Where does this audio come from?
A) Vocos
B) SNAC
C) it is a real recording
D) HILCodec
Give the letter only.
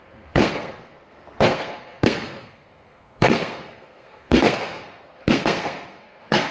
B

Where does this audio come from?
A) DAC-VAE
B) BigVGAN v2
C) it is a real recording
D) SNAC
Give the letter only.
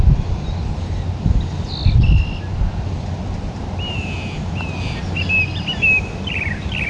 C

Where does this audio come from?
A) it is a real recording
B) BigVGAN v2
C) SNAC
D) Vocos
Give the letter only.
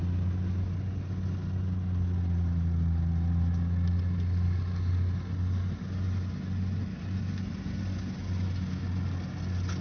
A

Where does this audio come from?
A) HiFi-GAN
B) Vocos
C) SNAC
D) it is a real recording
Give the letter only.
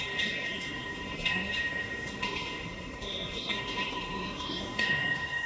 C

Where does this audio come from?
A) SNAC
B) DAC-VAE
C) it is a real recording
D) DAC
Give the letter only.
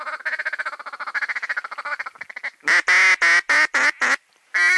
C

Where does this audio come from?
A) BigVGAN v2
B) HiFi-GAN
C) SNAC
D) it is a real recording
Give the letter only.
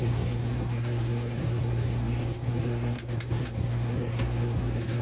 C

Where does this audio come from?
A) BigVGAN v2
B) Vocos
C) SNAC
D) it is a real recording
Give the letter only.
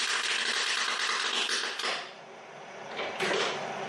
D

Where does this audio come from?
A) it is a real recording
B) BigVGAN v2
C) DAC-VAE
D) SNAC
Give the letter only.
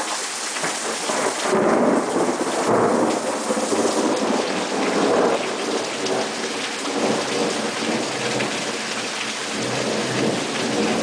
A